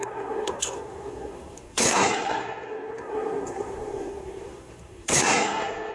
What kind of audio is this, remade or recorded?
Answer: remade